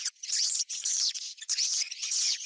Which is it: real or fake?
fake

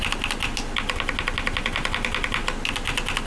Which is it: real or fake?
real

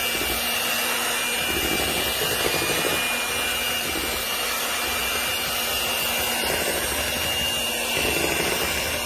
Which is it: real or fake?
real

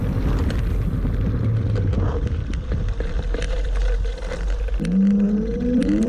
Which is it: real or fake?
real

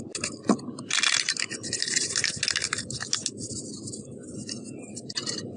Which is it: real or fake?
real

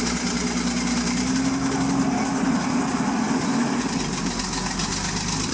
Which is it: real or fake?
real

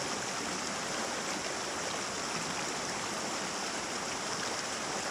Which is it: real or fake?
real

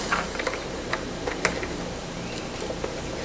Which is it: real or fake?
fake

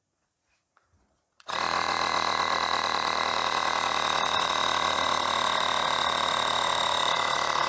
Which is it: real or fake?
fake